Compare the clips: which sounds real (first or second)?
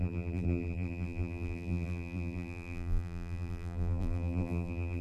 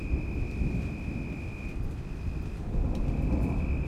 second